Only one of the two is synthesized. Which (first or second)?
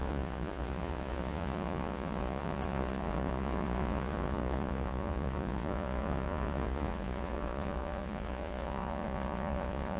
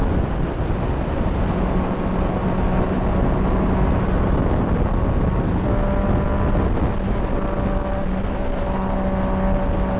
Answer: first